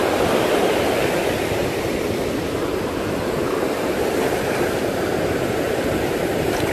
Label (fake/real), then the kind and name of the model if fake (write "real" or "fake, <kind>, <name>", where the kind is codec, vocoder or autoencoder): real